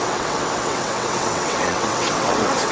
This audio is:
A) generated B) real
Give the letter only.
A